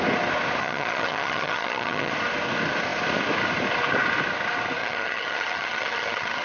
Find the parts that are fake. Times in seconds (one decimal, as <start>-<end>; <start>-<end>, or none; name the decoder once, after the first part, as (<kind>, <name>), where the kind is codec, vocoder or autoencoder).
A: 0.6-2.1 (vocoder, HiFi-GAN); 4.8-6.4